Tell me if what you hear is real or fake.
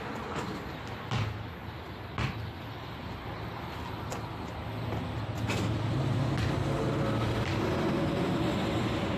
real